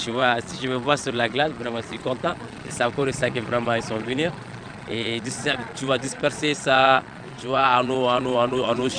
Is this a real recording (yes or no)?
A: no